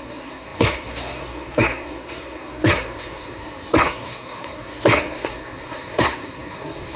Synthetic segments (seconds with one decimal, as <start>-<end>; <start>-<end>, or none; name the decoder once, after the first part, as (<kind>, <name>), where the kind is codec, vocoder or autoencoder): 0.0-7.0 (codec, SNAC)